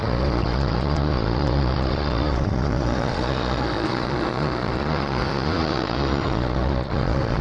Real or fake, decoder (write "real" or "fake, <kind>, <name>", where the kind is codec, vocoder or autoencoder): fake, vocoder, Vocos